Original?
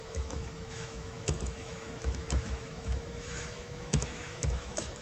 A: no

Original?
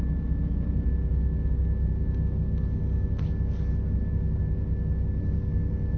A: yes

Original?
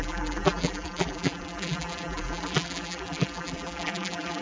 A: no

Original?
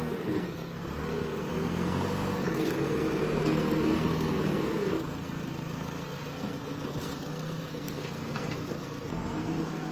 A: no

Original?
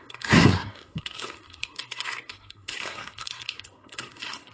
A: no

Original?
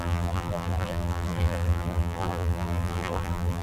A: no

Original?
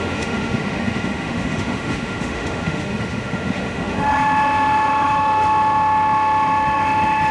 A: no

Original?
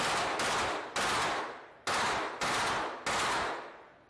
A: yes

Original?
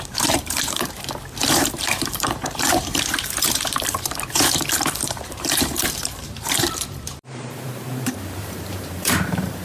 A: no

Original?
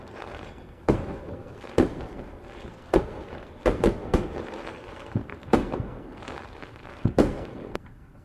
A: no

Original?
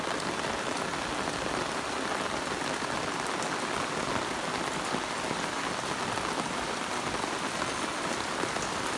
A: yes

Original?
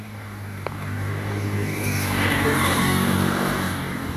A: no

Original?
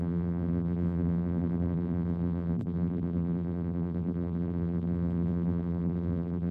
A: no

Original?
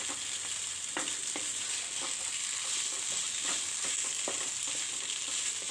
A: yes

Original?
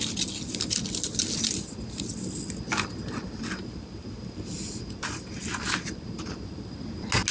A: yes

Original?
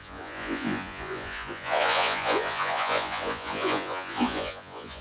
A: no